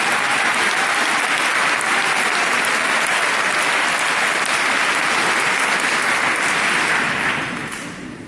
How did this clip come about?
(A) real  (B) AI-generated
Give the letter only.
A